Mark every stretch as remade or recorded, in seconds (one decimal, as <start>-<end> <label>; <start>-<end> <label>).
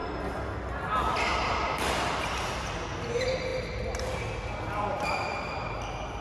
0.0-6.2 recorded